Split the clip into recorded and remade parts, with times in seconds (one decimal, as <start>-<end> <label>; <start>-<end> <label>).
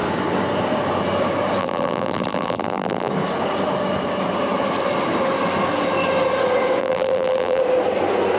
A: 0.0-1.6 recorded; 1.6-3.1 remade; 3.1-6.8 recorded; 6.8-7.6 remade; 7.6-8.4 recorded